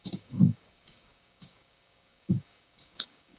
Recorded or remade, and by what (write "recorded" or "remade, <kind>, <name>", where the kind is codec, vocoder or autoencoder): remade, codec, DAC